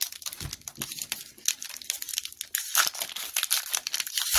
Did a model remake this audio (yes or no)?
yes